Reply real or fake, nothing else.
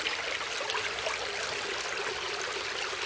real